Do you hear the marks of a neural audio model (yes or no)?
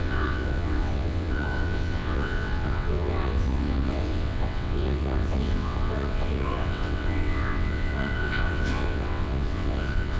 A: yes